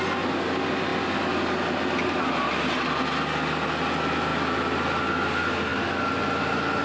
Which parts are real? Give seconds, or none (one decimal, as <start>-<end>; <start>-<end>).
0.0-6.8